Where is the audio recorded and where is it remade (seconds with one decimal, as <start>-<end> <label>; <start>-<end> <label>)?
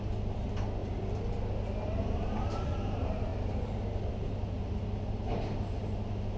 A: 0.0-6.4 recorded